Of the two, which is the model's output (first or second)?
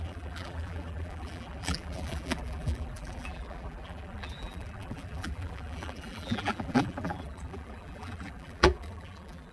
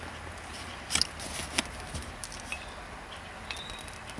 first